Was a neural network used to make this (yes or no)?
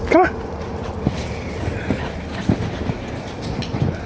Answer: no